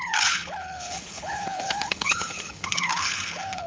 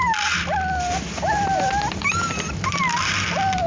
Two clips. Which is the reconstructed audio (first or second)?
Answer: first